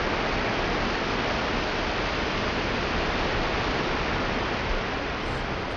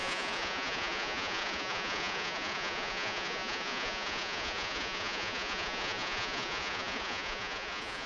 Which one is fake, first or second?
second